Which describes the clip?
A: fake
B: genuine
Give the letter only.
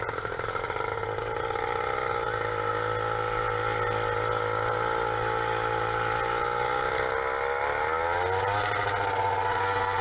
B